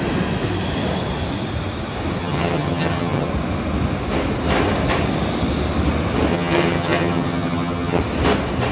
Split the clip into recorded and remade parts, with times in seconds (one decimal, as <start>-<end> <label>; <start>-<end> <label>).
0.0-2.2 recorded; 2.2-3.3 remade; 3.3-6.3 recorded; 6.3-8.0 remade; 8.0-8.7 recorded